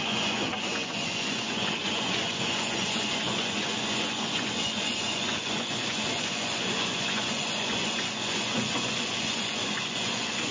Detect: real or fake fake